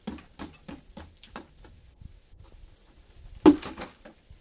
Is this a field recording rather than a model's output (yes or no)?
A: yes